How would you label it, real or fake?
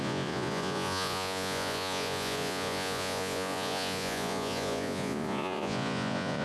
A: fake